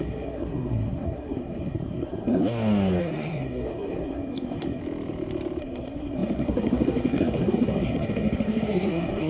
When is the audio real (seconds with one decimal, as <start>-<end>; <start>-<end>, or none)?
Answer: 2.4-3.0; 4.8-5.6